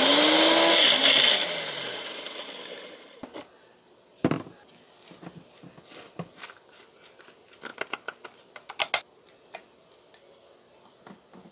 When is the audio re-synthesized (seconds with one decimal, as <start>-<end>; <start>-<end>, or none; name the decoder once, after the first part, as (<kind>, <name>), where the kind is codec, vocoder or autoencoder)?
none